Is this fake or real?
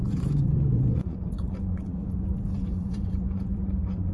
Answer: fake